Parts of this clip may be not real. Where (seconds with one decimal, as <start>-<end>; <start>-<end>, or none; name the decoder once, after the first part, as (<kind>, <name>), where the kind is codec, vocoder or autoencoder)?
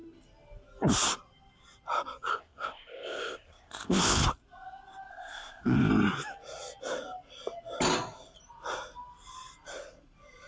2.3-4.2 (codec, ZipCodec); 5.1-5.9